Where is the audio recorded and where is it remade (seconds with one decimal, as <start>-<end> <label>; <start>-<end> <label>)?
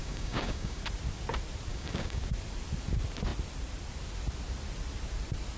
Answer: 0.0-0.8 remade; 0.8-1.7 recorded; 1.7-2.2 remade; 2.2-5.6 recorded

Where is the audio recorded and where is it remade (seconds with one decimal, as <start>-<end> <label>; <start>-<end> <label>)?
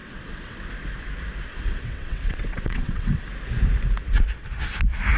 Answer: 0.0-0.7 remade; 0.7-1.5 recorded; 1.5-3.2 remade; 3.2-5.2 recorded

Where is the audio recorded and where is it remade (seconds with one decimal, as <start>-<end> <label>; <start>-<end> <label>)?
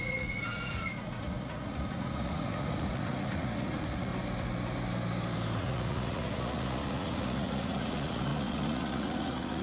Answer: 0.0-4.1 remade; 4.1-5.6 recorded; 5.6-9.6 remade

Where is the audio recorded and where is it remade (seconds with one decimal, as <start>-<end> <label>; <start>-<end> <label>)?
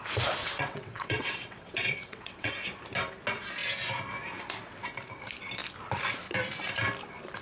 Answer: 0.0-0.4 recorded; 0.4-2.5 remade; 2.5-7.4 recorded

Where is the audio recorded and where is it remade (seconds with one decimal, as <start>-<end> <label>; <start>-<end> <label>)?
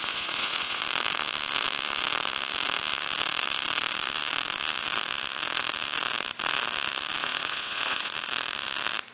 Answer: 0.0-0.8 remade; 0.8-7.2 recorded; 7.2-8.1 remade; 8.1-9.1 recorded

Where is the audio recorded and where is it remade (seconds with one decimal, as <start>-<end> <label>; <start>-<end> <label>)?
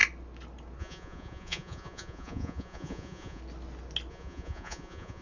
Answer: 0.0-0.8 recorded; 0.8-3.4 remade; 3.4-4.1 recorded; 4.1-5.2 remade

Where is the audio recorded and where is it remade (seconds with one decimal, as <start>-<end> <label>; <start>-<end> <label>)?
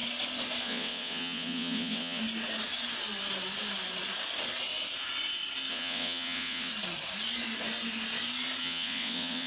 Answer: 0.0-0.6 recorded; 0.6-2.2 remade; 2.2-5.7 recorded; 5.7-6.7 remade; 6.7-8.6 recorded; 8.6-9.5 remade